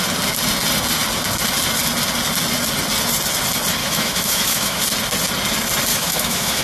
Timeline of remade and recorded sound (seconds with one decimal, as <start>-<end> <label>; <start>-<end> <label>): 0.0-3.8 recorded; 3.8-4.8 remade; 4.8-5.9 recorded; 5.9-6.6 remade